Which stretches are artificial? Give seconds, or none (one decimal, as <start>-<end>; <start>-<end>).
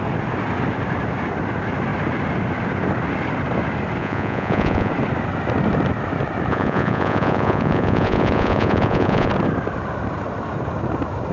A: 4.0-4.9; 6.5-9.3